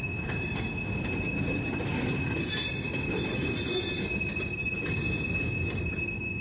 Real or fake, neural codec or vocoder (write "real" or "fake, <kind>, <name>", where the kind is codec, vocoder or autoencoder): real